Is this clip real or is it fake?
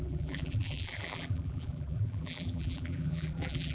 fake